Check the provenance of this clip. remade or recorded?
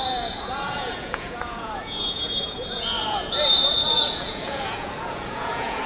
remade